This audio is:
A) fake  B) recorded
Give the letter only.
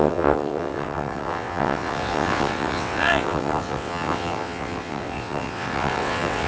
A